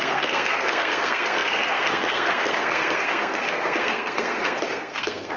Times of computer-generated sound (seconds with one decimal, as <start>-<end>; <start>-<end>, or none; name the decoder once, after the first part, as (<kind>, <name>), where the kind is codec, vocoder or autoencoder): 0.0-5.4 (codec, SNAC)